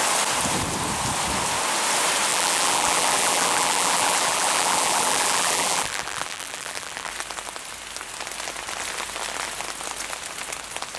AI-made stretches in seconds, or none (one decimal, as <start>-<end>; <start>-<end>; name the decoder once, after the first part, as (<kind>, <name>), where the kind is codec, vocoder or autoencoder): 2.3-7.1 (vocoder, BigVGAN v2)